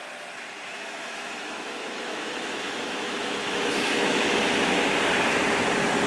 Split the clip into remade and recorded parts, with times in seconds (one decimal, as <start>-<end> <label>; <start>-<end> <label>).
0.0-0.7 recorded; 0.7-4.4 remade; 4.4-6.1 recorded